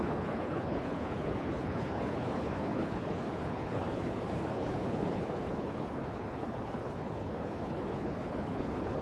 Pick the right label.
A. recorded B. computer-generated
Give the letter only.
B